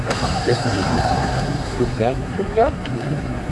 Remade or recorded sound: remade